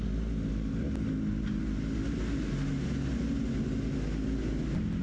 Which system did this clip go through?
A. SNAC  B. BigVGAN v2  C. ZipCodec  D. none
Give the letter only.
D